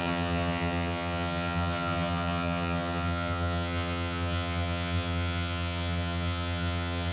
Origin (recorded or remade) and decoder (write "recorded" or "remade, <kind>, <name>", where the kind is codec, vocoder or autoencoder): remade, vocoder, HiFi-GAN